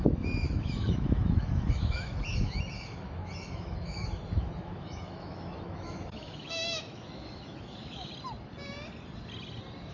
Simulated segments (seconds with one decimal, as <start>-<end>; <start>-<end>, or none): 0.0-8.1